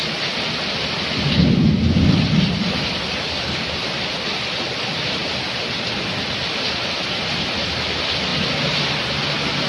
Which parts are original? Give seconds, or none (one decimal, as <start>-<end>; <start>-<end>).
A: 1.4-2.0; 8.3-9.7